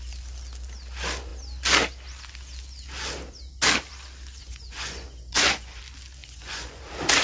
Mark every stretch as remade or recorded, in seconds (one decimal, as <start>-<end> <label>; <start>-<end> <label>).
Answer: 0.0-4.4 recorded; 4.4-5.8 remade; 5.8-6.2 recorded; 6.2-6.8 remade; 6.8-7.2 recorded